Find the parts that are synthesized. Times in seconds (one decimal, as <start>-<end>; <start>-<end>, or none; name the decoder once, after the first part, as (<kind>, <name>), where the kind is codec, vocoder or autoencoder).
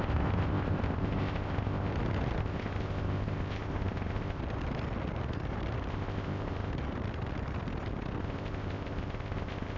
0.0-1.9 (codec, ZipCodec); 2.4-4.4; 5.9-6.7; 8.2-9.8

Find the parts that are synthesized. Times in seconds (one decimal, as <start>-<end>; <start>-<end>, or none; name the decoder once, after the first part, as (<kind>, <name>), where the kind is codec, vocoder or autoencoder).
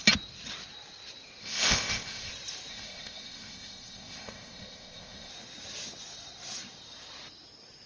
1.4-2.3 (codec, ZipCodec); 2.7-5.3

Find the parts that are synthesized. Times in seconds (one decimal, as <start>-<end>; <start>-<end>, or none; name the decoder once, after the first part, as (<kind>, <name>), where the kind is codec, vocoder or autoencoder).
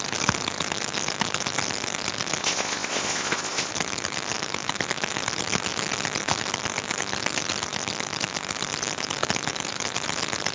2.4-3.7 (codec, ZipCodec)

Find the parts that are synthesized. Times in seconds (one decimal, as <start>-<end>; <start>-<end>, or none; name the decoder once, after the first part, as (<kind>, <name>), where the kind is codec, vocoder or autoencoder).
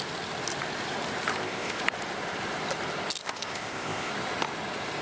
1.3-1.8 (codec, ZipCodec); 3.2-4.1